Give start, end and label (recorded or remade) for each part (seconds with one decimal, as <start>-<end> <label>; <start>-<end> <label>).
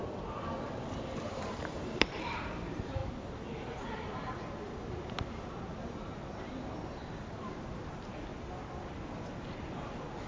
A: 0.0-1.2 recorded; 1.2-3.0 remade; 3.0-7.4 recorded; 7.4-8.3 remade; 8.3-10.3 recorded